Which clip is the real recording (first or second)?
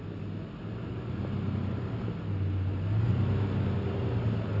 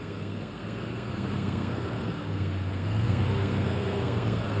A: first